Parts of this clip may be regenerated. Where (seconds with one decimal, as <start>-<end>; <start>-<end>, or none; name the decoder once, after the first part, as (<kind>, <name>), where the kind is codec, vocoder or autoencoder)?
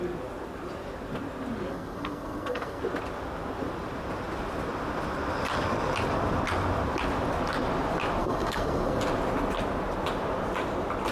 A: 1.7-2.8 (codec, SNAC); 8.2-9.0